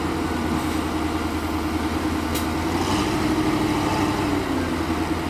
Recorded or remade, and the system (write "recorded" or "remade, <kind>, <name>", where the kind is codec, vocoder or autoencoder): recorded